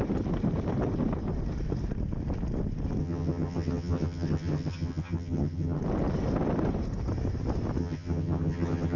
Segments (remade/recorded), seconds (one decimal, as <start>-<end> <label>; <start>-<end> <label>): 0.0-3.0 recorded; 3.0-5.8 remade; 5.8-7.8 recorded; 7.8-9.0 remade